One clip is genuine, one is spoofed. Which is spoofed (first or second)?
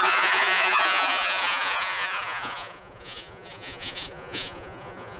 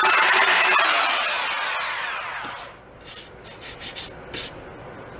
first